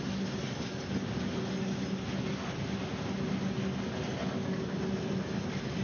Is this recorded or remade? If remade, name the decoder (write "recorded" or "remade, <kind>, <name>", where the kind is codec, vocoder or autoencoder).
recorded